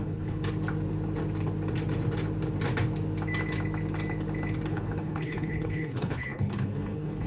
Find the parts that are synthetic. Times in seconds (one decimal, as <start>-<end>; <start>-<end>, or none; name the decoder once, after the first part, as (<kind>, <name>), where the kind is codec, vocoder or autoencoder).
0.0-0.4 (codec, HILCodec); 4.7-7.3